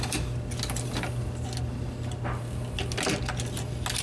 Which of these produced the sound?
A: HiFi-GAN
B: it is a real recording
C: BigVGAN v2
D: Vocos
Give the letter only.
B